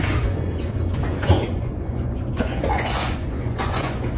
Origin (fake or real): fake